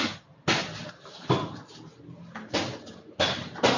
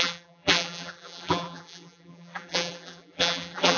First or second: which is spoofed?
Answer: second